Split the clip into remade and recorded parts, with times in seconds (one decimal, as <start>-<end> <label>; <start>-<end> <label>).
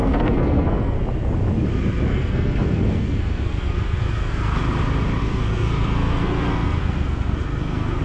0.0-1.0 remade; 1.0-2.1 recorded; 2.1-4.6 remade; 4.6-5.2 recorded; 5.2-8.0 remade